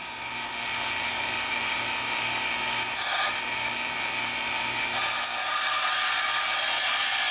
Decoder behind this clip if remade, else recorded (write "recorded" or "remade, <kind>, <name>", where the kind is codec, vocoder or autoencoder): recorded